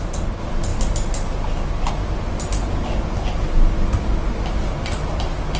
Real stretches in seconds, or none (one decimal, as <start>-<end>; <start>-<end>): 0.0-5.6